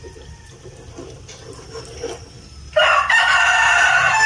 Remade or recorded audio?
recorded